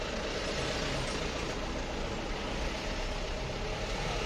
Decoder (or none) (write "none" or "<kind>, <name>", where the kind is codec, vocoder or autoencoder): none